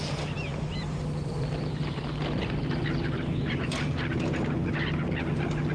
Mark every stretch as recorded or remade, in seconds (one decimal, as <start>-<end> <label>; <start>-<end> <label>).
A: 0.0-0.5 recorded; 0.5-3.9 remade; 3.9-5.7 recorded